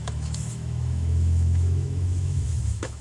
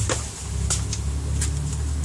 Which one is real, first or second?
second